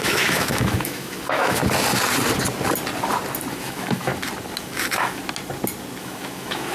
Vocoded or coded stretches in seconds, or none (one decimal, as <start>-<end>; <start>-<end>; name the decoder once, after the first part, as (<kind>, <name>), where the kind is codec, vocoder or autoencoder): 0.0-1.6 (autoencoder, DAC-VAE); 3.5-4.1; 4.6-5.2; 6.0-6.7